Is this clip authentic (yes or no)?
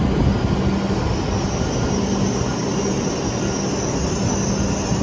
yes